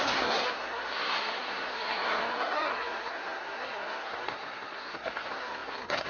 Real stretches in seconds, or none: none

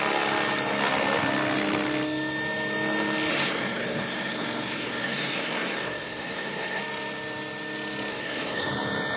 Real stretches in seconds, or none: 0.0-3.3; 6.8-8.1; 8.7-9.2